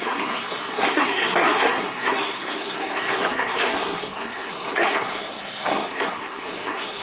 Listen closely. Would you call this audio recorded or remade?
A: remade